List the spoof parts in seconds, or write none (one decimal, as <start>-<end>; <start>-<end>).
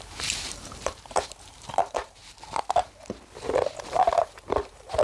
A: 0.0-2.2; 3.9-5.0